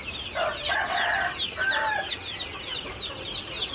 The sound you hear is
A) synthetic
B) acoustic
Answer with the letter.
B